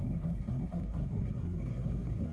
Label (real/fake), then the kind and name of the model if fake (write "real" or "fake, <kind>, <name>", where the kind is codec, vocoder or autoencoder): fake, codec, SNAC